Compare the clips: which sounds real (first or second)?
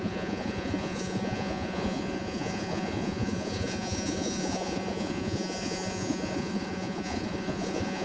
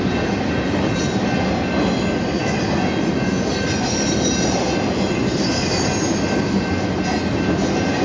second